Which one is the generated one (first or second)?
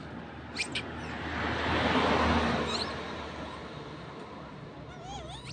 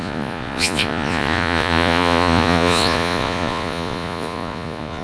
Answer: second